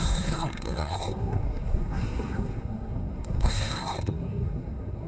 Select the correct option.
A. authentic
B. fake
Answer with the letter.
B